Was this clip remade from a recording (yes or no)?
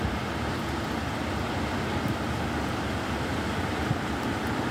no